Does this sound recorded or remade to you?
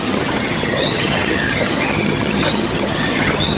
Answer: remade